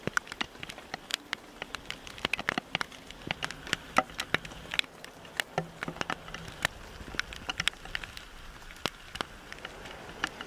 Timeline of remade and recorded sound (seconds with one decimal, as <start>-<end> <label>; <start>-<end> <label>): 0.0-10.5 recorded